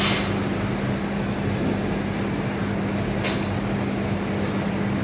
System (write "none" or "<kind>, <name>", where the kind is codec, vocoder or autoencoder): none